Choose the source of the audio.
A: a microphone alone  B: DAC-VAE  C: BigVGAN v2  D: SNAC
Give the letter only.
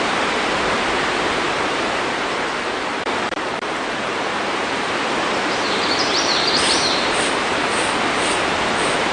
C